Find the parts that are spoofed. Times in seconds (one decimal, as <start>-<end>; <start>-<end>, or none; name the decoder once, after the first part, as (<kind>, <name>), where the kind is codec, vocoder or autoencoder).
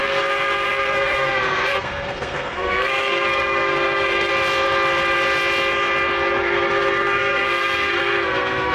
0.0-4.3 (codec, SNAC); 6.4-8.7